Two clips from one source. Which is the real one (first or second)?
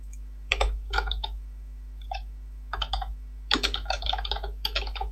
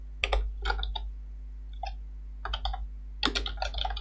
second